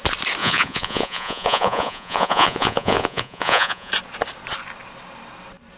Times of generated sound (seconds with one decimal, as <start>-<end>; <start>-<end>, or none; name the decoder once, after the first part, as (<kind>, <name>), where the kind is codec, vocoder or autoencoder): 0.4-3.9 (vocoder, Vocos)